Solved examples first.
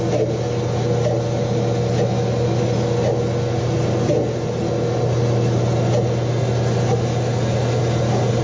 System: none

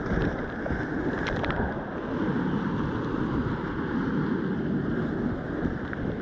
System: none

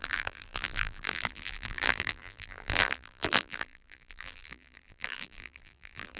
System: vocoder, BigVGAN v2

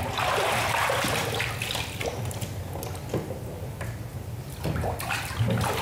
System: none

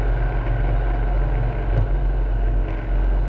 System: none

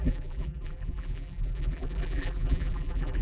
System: vocoder, BigVGAN v2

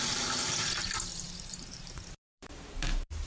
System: vocoder, BigVGAN v2